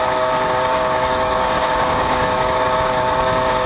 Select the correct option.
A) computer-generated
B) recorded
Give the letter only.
A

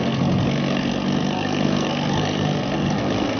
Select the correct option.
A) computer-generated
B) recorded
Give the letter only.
A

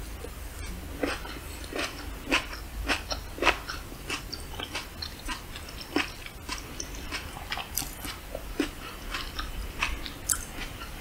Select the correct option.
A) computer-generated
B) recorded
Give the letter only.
B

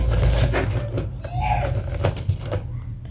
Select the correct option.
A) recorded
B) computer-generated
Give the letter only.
A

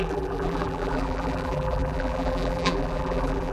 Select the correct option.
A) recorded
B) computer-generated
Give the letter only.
B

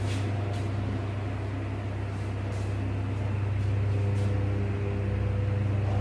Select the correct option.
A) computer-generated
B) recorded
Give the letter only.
B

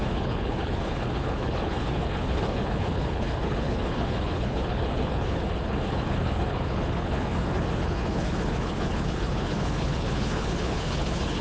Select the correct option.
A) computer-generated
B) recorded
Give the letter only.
A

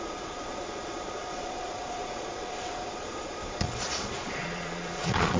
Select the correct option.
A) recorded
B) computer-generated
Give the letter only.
B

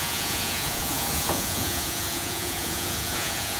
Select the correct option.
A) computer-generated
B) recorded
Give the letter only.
A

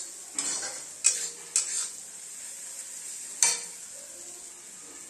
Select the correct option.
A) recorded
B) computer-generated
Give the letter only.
A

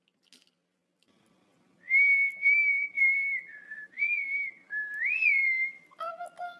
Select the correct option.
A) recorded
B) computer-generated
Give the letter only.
A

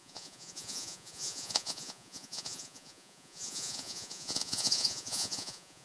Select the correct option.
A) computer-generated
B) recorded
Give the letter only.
A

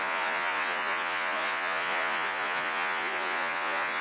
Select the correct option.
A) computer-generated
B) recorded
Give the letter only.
A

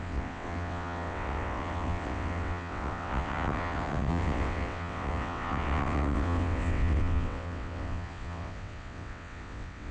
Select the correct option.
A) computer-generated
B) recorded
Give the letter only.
A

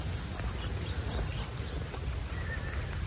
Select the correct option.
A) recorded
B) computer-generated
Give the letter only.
A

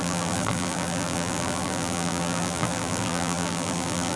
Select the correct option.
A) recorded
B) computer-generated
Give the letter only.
B